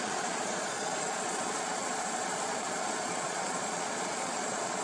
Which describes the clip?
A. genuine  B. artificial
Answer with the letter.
B